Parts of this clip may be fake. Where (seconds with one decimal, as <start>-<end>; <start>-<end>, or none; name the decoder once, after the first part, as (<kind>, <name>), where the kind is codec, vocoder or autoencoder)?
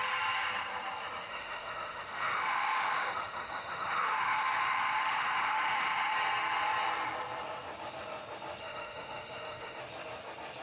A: 1.3-6.1 (autoencoder, DAC-VAE); 8.6-9.8